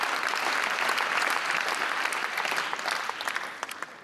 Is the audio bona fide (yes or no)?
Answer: yes